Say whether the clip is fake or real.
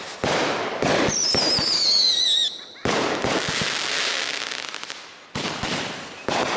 real